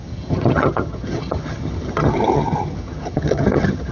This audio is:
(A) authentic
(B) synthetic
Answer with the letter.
B